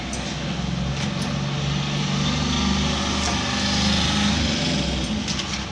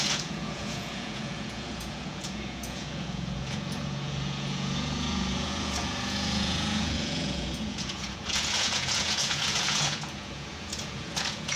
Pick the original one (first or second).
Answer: first